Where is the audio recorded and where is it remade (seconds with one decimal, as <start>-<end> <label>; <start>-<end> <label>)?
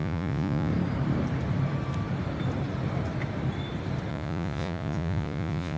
0.0-0.7 remade; 0.7-4.1 recorded; 4.1-5.8 remade